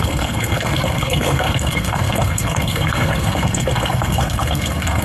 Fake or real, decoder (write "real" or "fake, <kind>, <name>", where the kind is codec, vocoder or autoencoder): fake, codec, SNAC